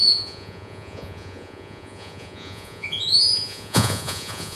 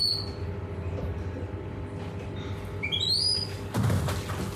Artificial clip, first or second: first